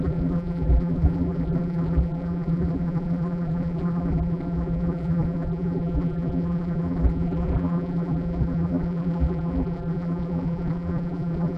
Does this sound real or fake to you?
fake